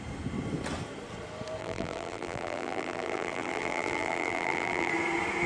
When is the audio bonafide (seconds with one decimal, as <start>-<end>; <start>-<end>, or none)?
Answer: 0.0-1.6; 4.9-5.5